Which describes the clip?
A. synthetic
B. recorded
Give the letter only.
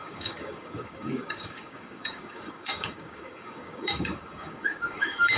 A